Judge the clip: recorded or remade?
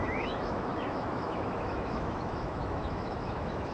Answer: remade